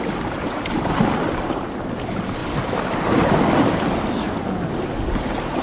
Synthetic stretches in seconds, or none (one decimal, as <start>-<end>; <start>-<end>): 2.4-3.4